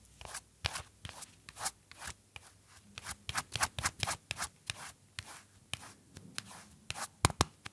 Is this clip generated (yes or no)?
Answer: no